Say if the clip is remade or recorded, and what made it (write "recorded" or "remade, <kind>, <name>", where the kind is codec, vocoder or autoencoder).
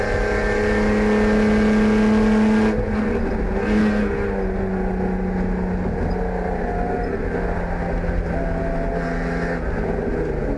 recorded